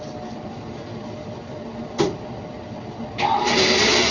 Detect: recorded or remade recorded